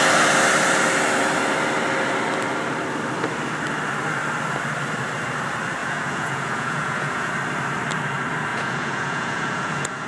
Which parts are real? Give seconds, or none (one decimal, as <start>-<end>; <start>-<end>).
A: 0.0-5.8; 7.3-8.5